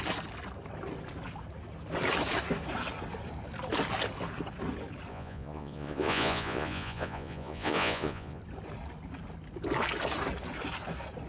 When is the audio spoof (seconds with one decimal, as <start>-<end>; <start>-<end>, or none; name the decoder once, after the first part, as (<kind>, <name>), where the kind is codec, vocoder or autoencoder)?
5.1-8.4 (vocoder, Vocos)